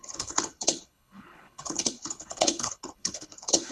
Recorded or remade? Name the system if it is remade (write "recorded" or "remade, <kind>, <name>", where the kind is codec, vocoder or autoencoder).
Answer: remade, codec, HILCodec